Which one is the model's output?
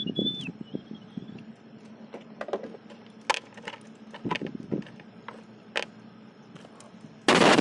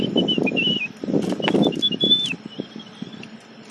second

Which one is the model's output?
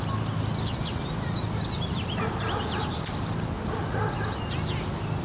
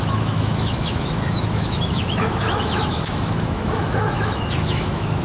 second